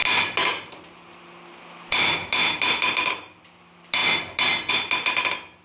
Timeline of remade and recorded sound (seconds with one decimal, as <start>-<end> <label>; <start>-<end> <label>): 0.0-5.6 recorded